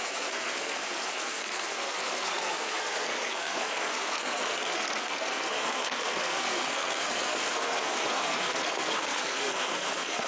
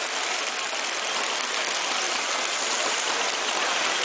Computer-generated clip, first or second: first